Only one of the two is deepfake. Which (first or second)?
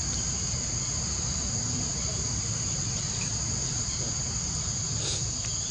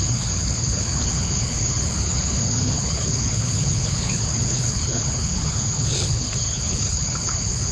second